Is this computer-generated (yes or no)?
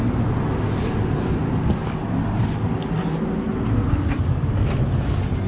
no